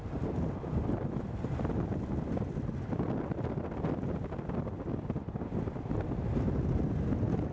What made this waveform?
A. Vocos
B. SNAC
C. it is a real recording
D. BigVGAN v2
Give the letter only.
C